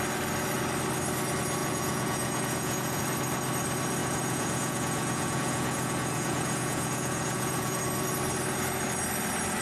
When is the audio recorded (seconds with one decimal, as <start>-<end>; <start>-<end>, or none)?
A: 0.0-1.6; 3.0-4.0; 7.8-9.6